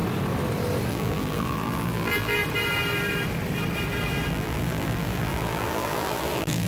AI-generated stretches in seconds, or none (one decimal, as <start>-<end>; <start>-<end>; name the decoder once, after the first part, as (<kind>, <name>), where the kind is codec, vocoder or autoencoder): 0.9-2.4 (vocoder, BigVGAN v2); 4.3-6.7